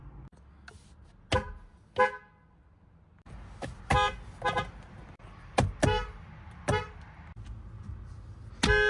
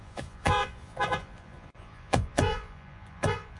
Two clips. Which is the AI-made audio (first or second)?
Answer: second